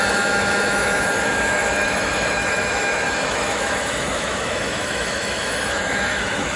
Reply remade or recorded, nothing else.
remade